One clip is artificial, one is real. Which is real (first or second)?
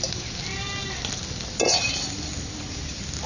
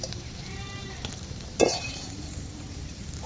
first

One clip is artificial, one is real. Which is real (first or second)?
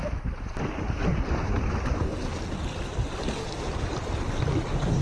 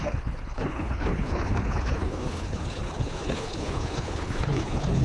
first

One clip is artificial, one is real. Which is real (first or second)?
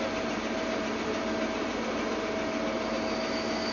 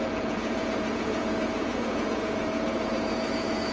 first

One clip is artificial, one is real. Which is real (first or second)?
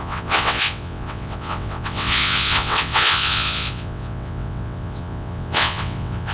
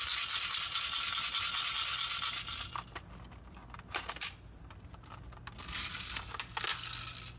second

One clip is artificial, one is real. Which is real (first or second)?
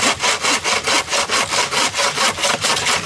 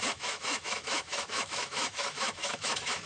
first